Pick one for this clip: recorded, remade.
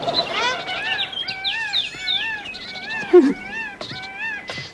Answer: recorded